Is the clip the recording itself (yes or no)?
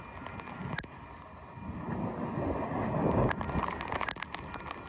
yes